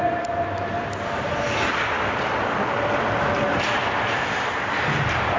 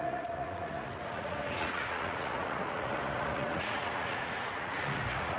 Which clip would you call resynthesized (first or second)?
second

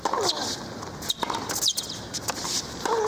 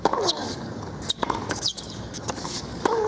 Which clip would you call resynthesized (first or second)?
second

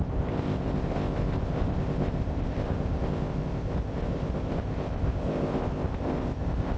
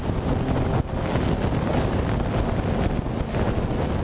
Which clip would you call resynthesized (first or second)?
first